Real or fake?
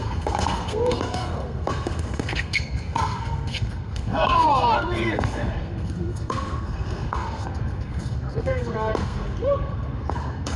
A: fake